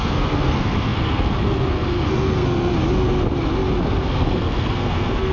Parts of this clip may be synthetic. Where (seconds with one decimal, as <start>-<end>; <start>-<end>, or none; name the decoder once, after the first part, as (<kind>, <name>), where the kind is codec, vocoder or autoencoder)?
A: 0.0-2.7 (codec, SNAC); 3.9-5.3

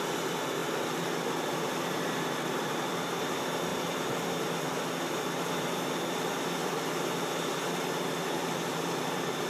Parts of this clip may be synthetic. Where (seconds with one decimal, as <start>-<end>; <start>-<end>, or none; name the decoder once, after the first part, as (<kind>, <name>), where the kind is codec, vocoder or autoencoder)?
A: 0.6-2.9 (vocoder, BigVGAN v2); 6.6-8.9

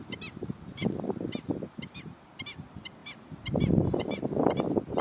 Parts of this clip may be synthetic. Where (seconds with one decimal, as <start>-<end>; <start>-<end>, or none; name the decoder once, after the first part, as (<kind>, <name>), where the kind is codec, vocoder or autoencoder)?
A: none

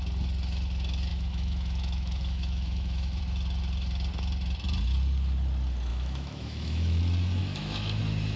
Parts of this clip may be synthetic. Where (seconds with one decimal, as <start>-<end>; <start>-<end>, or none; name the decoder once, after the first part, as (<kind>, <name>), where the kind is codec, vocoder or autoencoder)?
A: 1.1-3.2 (autoencoder, DAC-VAE); 5.9-7.0; 7.4-8.0

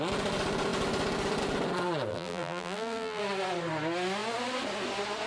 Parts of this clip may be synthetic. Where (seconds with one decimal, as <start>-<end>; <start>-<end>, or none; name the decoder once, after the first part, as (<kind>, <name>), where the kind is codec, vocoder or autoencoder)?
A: 2.1-3.2 (vocoder, BigVGAN v2)

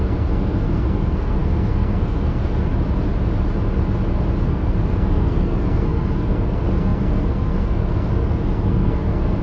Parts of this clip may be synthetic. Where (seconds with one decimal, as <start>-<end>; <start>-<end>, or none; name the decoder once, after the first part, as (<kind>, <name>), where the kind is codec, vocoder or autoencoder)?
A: 0.0-2.7 (codec, SNAC); 4.4-9.4